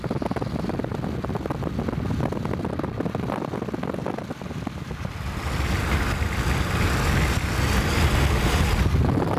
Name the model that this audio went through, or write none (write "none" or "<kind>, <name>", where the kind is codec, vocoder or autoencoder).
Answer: none